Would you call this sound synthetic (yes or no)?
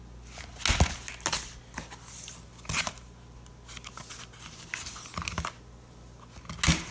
no